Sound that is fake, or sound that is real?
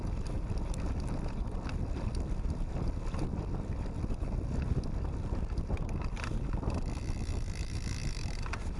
fake